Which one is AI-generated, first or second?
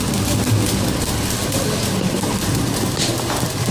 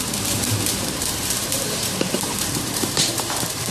second